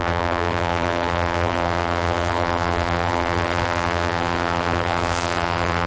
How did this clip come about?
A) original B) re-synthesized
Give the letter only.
B